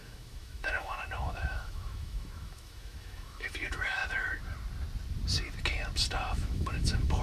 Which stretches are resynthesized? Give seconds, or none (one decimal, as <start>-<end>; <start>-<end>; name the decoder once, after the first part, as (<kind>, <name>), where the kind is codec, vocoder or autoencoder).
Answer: 0.0-4.0 (autoencoder, DAC-VAE); 6.3-7.2